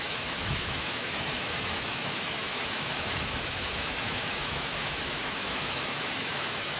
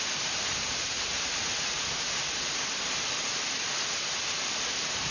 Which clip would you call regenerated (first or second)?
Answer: first